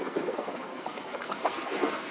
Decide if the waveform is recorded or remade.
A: remade